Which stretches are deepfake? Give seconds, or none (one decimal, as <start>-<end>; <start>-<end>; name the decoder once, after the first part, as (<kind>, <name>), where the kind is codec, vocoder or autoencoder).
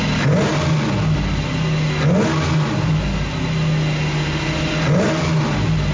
none